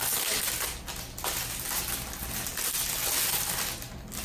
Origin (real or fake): real